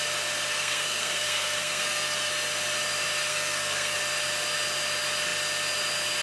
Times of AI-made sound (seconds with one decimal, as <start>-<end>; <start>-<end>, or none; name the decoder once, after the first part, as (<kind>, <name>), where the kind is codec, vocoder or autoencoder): 0.5-2.3 (codec, SNAC); 3.3-4.0